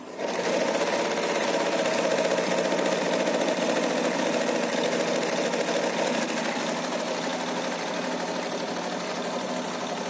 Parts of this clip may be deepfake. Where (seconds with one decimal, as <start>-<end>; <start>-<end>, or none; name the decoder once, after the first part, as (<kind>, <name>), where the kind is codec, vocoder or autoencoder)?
none

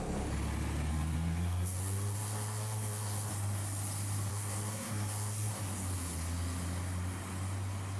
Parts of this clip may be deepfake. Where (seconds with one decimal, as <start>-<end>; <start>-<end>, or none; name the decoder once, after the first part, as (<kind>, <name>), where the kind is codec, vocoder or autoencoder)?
0.9-3.3 (codec, SNAC); 4.3-5.6

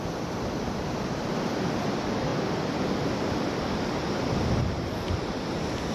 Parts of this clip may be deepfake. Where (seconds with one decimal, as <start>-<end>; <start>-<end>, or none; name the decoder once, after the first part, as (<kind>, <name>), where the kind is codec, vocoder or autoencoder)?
none

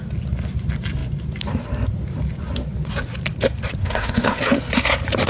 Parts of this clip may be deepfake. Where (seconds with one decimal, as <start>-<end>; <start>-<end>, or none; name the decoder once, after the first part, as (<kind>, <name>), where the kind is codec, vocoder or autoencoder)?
3.8-4.4 (autoencoder, DAC-VAE)